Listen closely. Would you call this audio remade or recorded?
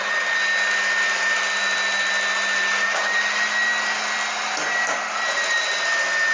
recorded